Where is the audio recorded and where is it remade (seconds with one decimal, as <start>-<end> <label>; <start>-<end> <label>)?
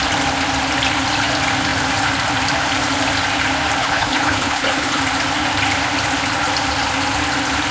0.0-3.8 recorded; 3.8-5.0 remade; 5.0-7.7 recorded